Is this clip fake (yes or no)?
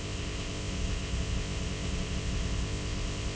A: yes